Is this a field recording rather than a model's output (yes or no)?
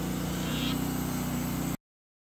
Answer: yes